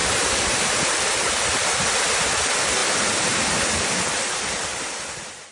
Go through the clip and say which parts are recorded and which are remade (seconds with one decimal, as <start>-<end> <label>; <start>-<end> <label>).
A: 0.0-1.3 remade; 1.3-2.8 recorded; 2.8-5.5 remade